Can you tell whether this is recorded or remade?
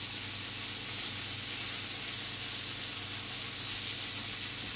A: recorded